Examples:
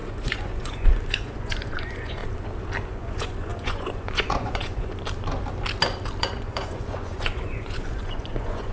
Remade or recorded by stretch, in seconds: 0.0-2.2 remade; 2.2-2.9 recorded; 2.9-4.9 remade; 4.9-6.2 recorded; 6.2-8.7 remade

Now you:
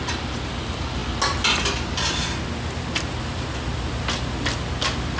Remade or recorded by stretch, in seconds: 0.0-5.2 recorded